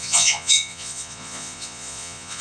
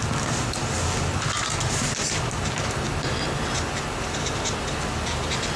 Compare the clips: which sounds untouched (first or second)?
second